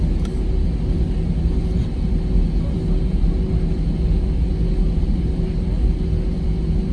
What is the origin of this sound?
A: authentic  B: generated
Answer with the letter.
A